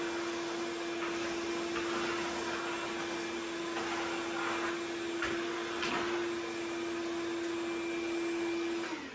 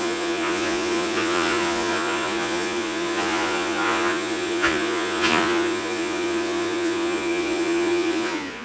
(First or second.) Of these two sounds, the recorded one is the first